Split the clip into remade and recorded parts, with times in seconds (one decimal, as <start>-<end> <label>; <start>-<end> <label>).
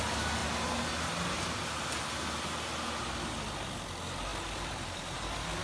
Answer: 0.0-5.6 recorded